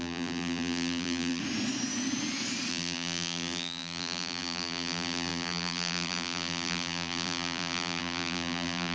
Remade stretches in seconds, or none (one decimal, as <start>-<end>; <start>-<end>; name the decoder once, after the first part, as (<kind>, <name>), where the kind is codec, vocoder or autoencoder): 0.0-1.4 (vocoder, BigVGAN v2); 2.7-8.9